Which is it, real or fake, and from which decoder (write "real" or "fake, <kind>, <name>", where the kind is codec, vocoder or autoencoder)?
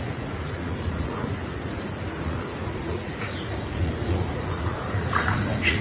fake, vocoder, Vocos